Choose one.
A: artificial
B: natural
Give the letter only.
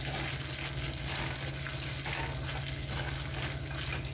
B